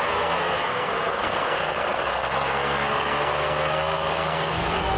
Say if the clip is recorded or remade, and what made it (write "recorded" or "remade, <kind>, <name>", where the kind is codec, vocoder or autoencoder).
remade, codec, SNAC